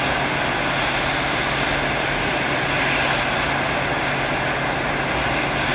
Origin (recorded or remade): recorded